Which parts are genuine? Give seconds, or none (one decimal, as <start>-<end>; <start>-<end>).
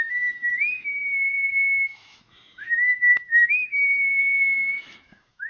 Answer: none